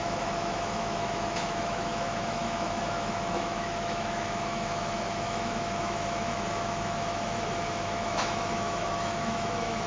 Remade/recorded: remade